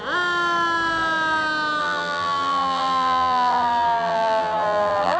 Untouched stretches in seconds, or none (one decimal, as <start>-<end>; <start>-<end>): 0.0-1.8